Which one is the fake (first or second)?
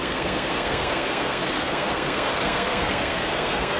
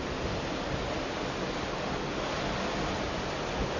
first